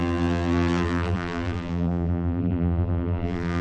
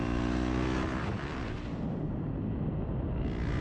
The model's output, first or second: first